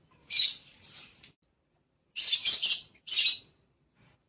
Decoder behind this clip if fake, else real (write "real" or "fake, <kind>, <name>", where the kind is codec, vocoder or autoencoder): fake, vocoder, BigVGAN v2